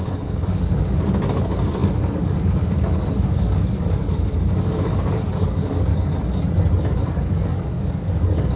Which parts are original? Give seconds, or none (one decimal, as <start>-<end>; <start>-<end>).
5.9-6.8

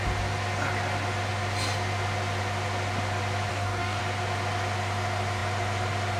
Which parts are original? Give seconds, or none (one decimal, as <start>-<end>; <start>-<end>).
0.0-3.5; 4.0-6.2

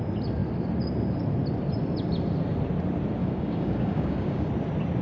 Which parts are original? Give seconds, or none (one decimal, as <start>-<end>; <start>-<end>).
0.0-3.2; 4.5-5.0

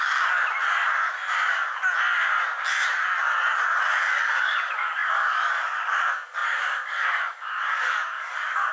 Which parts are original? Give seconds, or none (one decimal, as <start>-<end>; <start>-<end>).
0.4-4.0

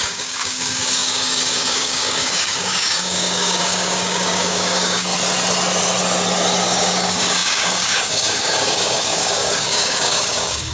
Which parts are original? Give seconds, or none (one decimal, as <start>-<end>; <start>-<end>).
5.1-6.6

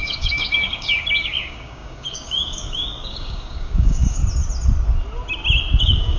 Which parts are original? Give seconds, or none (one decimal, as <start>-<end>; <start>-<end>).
4.2-5.8

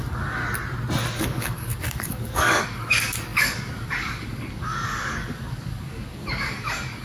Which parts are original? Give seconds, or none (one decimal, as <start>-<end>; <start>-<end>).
0.4-1.2

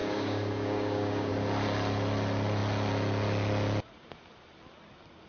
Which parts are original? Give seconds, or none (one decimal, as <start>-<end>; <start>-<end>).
1.3-5.3